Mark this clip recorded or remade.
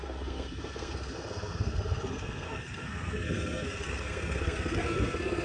remade